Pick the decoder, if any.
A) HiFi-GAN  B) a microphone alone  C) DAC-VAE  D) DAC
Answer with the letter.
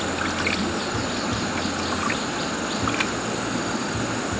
B